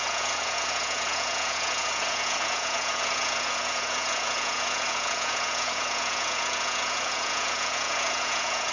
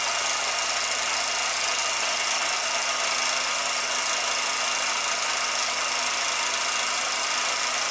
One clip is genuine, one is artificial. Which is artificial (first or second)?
first